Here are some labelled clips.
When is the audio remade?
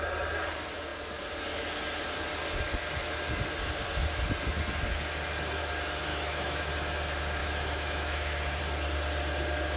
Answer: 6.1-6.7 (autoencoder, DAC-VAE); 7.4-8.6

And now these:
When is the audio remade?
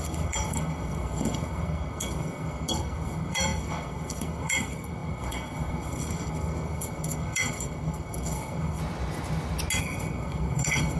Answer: 0.0-8.8 (codec, SNAC); 9.8-11.0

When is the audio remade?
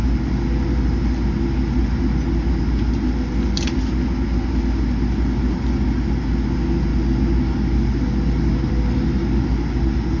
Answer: none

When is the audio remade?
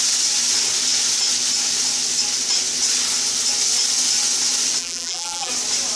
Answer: 4.8-5.5 (vocoder, BigVGAN v2)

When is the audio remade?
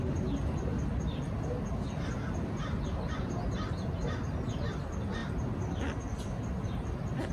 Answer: none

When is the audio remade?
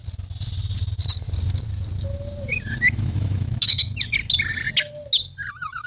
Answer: 2.9-4.2 (autoencoder, DAC-VAE); 5.5-5.9